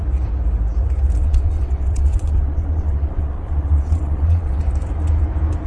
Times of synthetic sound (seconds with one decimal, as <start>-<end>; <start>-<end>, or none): 1.2-4.6